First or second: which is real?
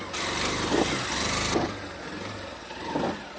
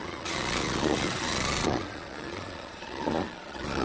first